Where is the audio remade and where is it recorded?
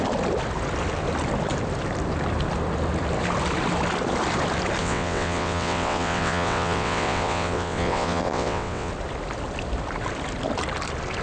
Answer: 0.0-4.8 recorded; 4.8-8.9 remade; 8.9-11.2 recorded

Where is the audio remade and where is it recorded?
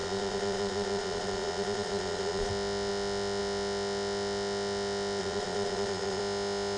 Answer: 0.0-2.5 remade; 2.5-5.2 recorded; 5.2-6.2 remade; 6.2-6.8 recorded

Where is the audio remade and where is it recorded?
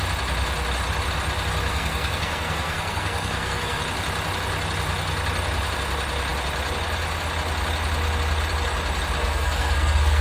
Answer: 0.0-1.7 recorded; 1.7-3.8 remade; 3.8-9.2 recorded; 9.2-10.2 remade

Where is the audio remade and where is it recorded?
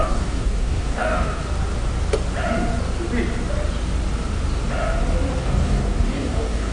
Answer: 0.0-1.4 remade; 1.4-5.4 recorded; 5.4-6.7 remade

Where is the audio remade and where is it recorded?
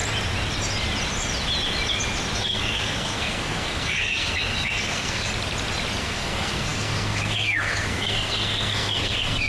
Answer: 0.0-2.4 recorded; 2.4-5.3 remade; 5.3-6.0 recorded; 6.0-9.5 remade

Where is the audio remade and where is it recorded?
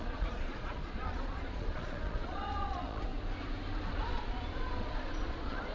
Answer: 0.0-3.1 remade; 3.1-3.9 recorded; 3.9-5.7 remade